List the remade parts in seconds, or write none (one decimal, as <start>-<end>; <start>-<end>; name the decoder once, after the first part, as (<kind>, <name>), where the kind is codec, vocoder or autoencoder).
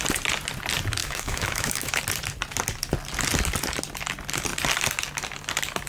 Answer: 1.0-2.0 (autoencoder, DAC-VAE)